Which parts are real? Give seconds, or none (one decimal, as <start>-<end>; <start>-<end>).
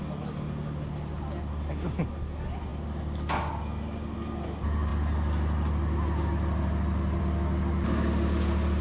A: 0.0-8.8